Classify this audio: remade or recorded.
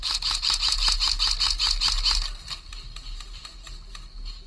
recorded